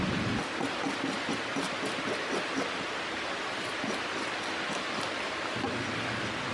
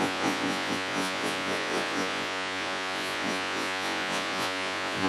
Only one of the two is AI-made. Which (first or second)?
second